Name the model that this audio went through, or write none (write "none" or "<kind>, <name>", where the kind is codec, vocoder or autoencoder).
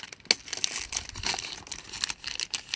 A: none